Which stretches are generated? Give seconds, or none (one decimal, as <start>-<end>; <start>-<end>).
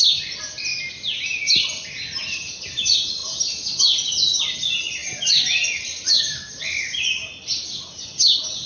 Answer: none